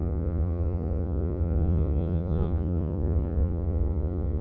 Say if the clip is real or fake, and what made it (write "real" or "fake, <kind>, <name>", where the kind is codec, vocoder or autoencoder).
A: fake, vocoder, Vocos